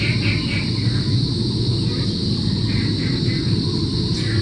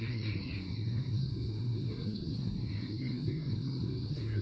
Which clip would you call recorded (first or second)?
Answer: first